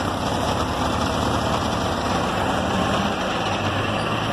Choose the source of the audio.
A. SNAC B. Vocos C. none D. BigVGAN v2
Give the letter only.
D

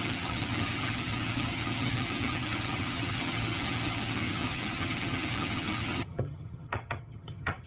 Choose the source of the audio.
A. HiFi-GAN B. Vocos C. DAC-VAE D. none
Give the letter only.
A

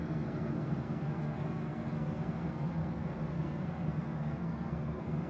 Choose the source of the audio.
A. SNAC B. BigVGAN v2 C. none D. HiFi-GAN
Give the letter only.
A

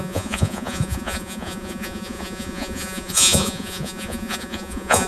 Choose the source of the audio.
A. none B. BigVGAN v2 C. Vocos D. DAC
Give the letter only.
C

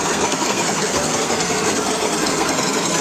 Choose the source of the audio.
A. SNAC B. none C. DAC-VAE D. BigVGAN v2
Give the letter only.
A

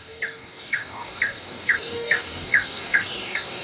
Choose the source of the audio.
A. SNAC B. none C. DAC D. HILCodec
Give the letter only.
C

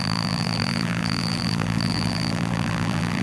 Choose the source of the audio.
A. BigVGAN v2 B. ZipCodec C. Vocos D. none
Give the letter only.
A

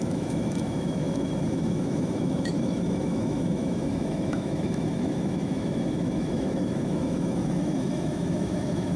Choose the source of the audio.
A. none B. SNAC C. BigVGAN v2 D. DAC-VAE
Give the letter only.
D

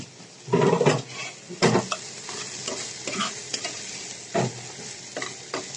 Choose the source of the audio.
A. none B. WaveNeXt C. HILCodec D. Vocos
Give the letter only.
A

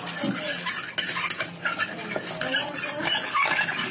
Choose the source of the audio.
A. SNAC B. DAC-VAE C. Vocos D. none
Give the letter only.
D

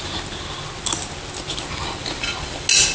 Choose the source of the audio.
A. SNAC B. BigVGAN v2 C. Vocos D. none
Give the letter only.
D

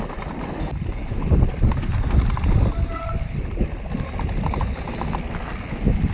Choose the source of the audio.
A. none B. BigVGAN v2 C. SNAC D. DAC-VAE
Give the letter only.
A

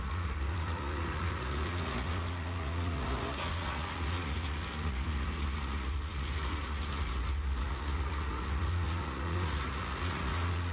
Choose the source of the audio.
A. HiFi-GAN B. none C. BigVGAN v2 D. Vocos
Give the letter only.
D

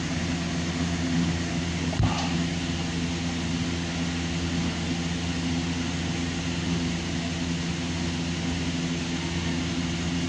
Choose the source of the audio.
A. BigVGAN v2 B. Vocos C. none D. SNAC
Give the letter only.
C